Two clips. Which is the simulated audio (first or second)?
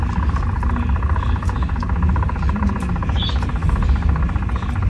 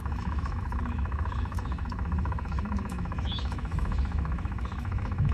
second